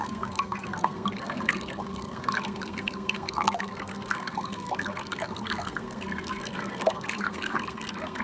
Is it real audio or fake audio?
fake